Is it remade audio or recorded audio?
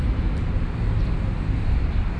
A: remade